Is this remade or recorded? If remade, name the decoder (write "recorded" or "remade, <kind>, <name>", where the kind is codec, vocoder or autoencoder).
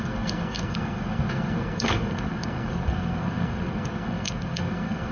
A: remade, codec, SNAC